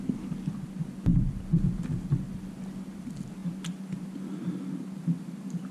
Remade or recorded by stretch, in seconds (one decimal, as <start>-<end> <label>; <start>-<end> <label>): 0.0-5.7 recorded